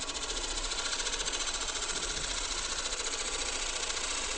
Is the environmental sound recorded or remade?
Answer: remade